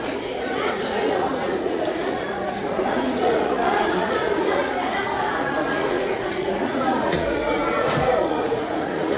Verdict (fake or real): fake